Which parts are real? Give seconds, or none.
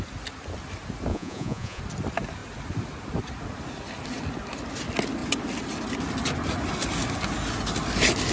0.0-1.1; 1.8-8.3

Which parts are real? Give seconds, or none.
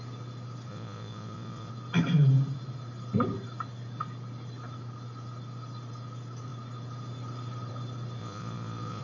0.0-0.7; 1.7-8.2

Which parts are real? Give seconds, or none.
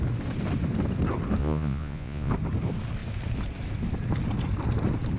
0.0-1.4; 2.3-5.2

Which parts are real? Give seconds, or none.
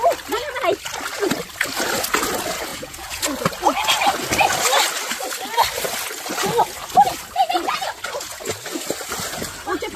0.0-2.7; 3.2-10.0